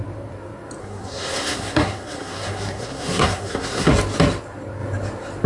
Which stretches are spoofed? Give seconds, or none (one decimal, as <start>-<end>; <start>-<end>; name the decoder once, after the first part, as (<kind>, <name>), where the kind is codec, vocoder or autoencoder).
0.8-3.9 (codec, SNAC)